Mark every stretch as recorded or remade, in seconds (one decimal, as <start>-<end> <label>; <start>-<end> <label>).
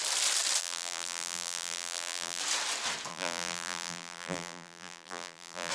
0.0-0.6 recorded; 0.6-2.4 remade; 2.4-3.1 recorded; 3.1-5.7 remade